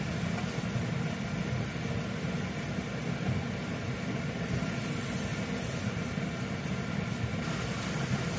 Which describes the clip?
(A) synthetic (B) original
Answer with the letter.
B